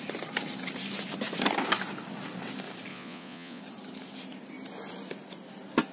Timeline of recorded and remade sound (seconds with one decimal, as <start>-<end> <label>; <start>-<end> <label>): 0.0-2.9 recorded; 2.9-3.6 remade; 3.6-5.9 recorded

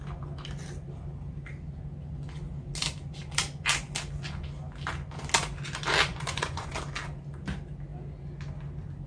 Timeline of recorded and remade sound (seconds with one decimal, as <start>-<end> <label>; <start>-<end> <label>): 0.0-6.1 recorded; 6.1-6.7 remade; 6.7-9.1 recorded

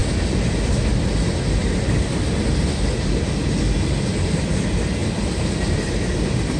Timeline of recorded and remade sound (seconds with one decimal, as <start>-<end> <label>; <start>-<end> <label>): 0.0-6.6 recorded